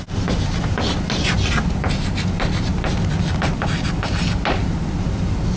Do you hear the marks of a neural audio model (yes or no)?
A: no